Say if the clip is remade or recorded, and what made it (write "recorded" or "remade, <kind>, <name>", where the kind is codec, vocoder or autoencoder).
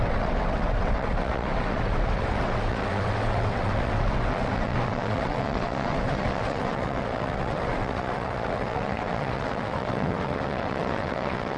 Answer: remade, vocoder, WaveNeXt